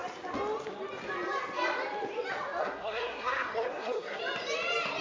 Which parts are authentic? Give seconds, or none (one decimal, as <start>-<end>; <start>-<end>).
0.0-2.6; 4.2-5.0